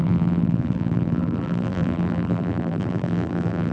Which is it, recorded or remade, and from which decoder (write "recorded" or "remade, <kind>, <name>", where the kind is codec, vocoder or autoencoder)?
remade, vocoder, BigVGAN v2